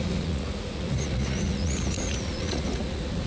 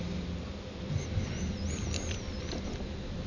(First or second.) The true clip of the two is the second